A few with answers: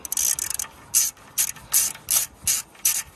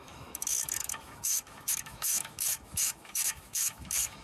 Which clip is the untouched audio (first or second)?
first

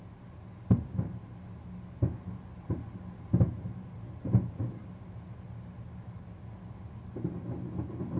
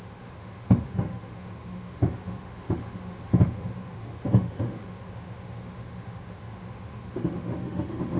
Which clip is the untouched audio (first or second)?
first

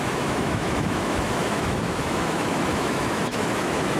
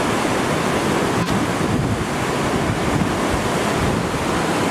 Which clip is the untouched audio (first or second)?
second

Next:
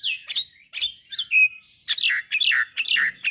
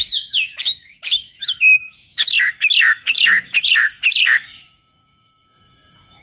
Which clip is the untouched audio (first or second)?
first